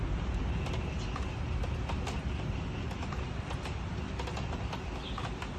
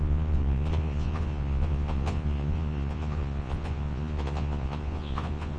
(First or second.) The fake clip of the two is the second